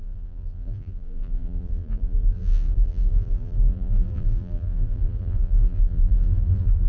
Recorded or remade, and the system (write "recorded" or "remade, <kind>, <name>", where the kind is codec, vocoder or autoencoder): remade, vocoder, BigVGAN v2